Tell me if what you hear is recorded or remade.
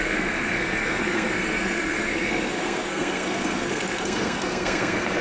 remade